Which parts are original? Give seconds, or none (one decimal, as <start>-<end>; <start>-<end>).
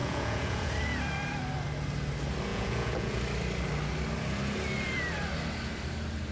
0.7-2.5; 3.2-6.3